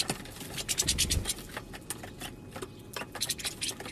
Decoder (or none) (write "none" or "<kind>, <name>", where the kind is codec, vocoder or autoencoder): none